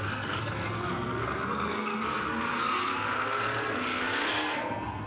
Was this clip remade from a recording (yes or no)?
yes